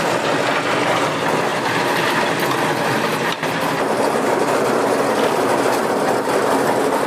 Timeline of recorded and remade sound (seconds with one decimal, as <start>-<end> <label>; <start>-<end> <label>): 0.0-1.5 recorded; 1.5-2.4 remade; 2.4-3.1 recorded; 3.1-5.0 remade; 5.0-7.1 recorded